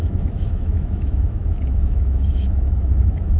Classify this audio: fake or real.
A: fake